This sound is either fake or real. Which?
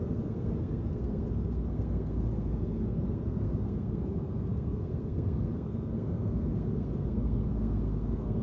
fake